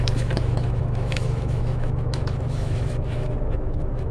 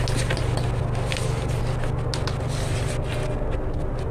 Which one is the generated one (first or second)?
first